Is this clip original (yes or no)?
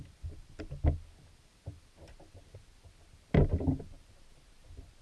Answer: yes